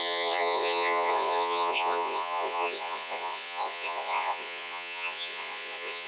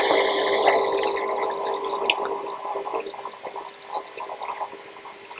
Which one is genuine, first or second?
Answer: second